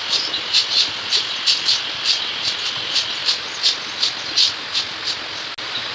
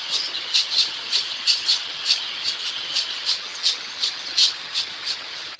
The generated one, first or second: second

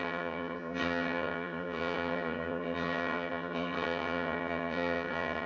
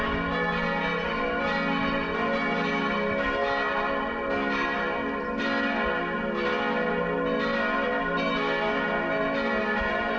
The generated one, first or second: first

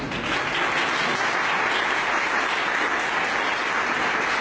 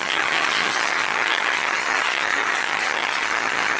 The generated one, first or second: second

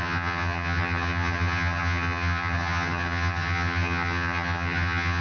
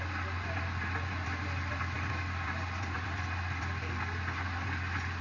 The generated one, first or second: first